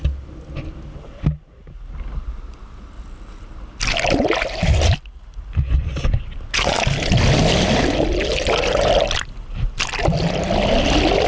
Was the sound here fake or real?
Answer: real